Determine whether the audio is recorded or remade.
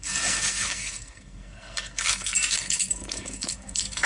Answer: remade